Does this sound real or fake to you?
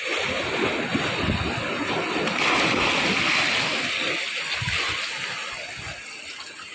real